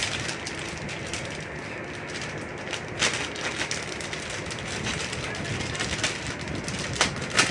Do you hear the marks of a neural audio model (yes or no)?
no